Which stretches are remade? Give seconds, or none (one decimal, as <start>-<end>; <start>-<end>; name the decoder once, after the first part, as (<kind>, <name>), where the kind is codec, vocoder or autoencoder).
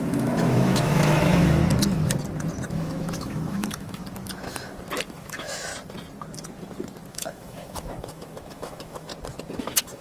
0.0-1.6 (autoencoder, DAC-VAE); 2.7-4.0; 5.1-5.7; 7.1-9.1; 9.6-10.0